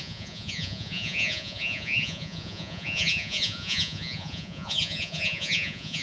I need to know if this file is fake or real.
fake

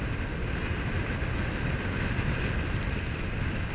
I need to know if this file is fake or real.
real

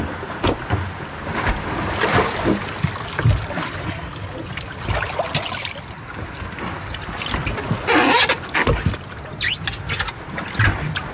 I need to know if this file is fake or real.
real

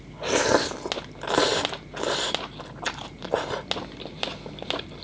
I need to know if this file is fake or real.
real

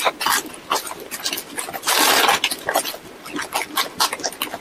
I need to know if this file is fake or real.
real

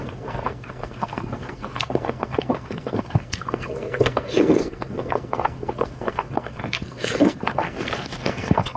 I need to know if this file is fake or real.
fake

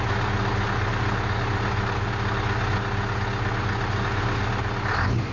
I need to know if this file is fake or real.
real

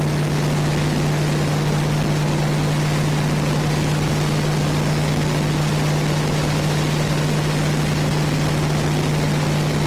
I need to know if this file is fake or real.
real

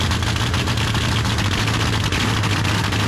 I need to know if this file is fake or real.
real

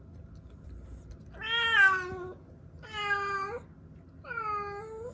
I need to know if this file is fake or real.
real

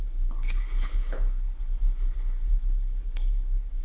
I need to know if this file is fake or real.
fake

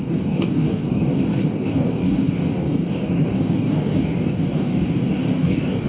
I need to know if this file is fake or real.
fake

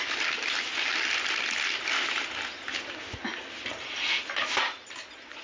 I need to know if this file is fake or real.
real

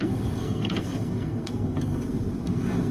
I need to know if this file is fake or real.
fake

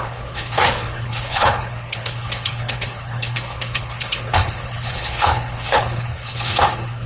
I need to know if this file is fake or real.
fake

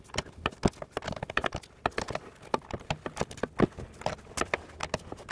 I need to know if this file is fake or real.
real